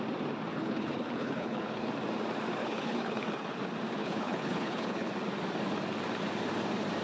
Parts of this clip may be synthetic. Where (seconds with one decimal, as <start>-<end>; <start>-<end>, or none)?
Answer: 0.5-1.9; 2.6-3.6; 4.0-5.1